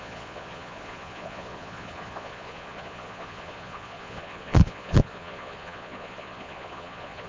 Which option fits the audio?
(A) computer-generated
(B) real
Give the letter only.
A